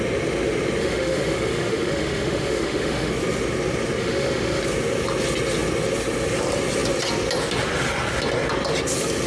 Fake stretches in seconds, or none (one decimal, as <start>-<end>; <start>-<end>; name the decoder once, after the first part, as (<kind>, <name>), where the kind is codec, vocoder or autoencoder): 0.8-3.1 (autoencoder, DAC-VAE); 4.0-4.6